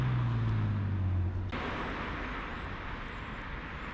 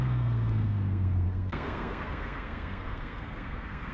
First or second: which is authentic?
first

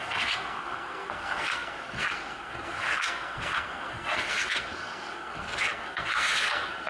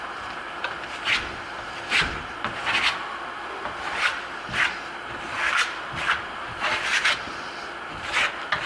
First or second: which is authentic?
second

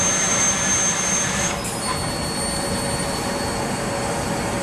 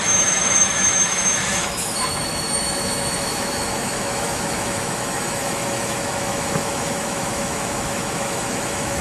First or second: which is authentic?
first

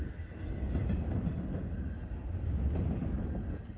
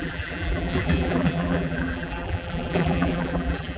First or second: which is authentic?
first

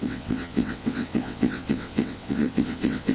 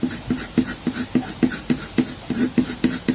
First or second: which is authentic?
second